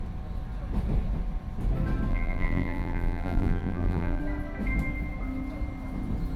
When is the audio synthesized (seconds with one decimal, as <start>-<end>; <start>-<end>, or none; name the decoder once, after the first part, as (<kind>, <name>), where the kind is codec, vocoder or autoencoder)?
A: 2.1-4.2 (vocoder, BigVGAN v2)